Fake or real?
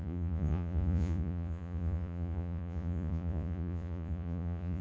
fake